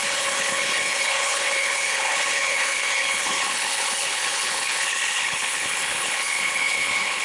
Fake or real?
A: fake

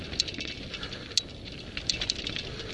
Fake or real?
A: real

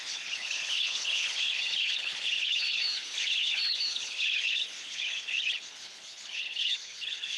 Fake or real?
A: fake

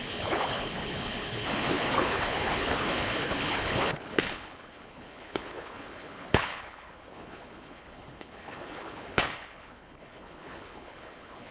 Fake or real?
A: fake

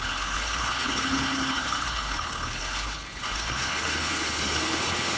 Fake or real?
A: fake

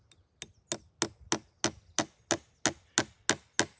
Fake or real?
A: real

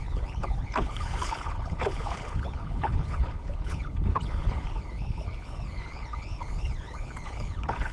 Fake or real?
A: fake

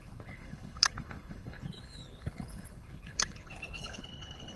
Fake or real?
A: fake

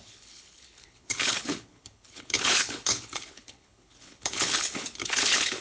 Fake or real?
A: fake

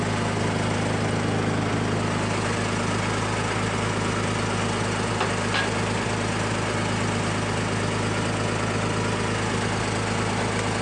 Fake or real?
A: real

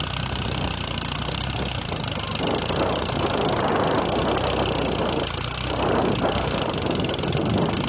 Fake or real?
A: real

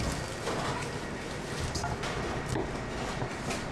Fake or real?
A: real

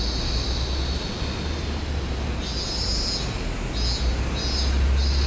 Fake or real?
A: real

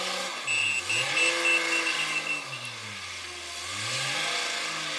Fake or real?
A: real